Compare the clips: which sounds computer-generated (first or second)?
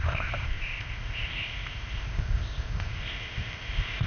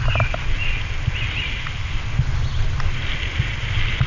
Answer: first